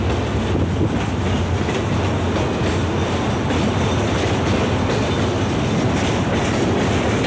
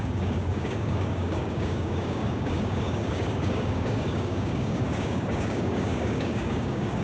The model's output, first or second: second